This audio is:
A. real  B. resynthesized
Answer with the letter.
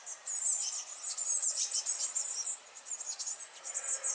A